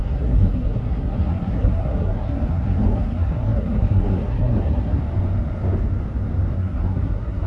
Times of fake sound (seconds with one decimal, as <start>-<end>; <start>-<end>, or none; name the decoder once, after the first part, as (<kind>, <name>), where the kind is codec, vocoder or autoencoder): 0.0-5.0 (codec, SNAC); 6.5-7.5